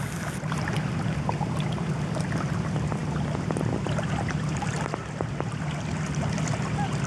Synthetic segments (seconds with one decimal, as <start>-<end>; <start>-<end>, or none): 0.0-7.1